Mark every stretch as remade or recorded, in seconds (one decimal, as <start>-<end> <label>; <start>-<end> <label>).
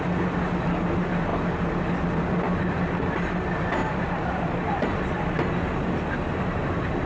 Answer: 0.0-7.1 recorded